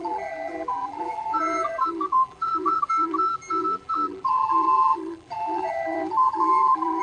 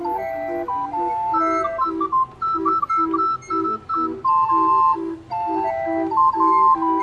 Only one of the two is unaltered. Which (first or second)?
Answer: second